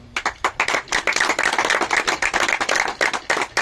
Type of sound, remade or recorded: recorded